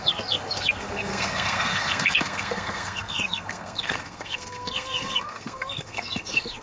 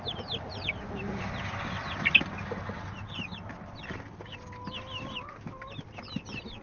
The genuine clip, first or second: second